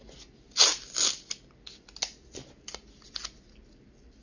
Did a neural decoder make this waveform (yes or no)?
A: no